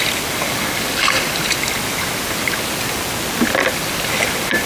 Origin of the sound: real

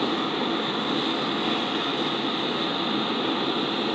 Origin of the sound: real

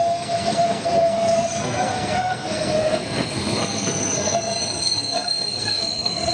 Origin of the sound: fake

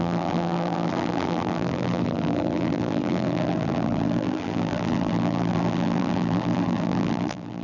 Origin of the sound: fake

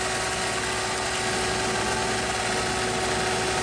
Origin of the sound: real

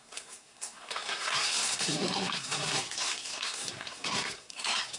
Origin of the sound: fake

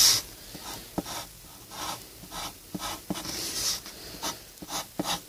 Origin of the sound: real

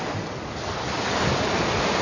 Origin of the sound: real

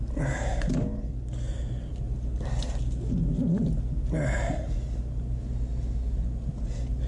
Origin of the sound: real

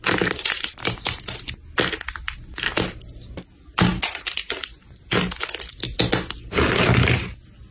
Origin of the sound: real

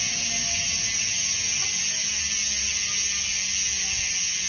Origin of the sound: real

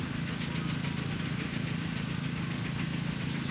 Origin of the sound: real